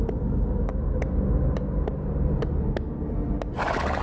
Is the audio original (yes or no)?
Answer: yes